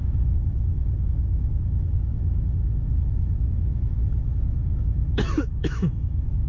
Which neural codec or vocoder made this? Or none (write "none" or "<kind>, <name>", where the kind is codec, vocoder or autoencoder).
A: autoencoder, DAC-VAE